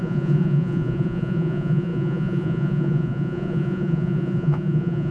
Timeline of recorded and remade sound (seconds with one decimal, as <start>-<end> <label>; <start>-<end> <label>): 0.0-5.1 remade